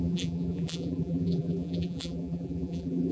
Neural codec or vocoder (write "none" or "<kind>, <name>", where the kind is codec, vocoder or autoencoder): vocoder, BigVGAN v2